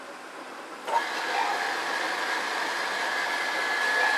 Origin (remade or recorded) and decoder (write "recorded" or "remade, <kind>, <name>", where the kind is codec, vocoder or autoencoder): recorded